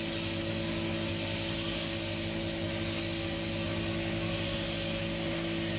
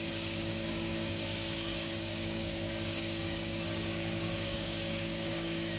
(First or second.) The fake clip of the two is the second